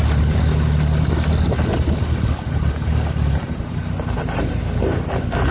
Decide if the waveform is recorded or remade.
recorded